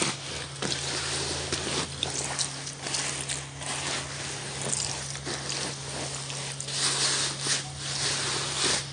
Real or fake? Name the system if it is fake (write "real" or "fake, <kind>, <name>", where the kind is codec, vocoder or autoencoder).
real